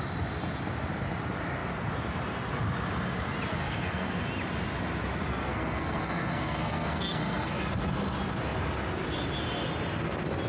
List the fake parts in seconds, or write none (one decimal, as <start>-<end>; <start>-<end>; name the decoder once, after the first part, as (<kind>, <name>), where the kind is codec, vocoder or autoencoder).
3.5-4.2 (codec, SNAC); 5.3-7.6